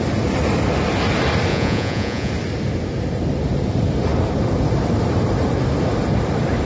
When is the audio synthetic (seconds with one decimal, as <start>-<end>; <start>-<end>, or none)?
1.5-2.3